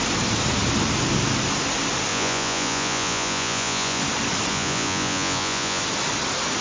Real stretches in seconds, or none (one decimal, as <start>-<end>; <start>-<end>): 0.0-2.1; 4.0-4.5; 5.8-6.6